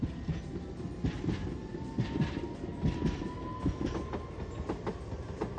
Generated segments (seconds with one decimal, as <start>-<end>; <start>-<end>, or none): none